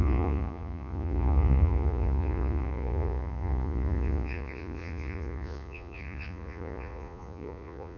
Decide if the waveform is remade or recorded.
remade